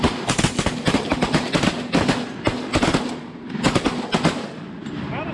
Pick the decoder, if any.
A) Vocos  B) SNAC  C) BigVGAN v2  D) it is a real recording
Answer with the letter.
D